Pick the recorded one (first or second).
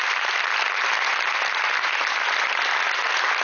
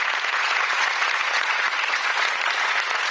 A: first